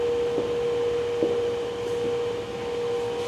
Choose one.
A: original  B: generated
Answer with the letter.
A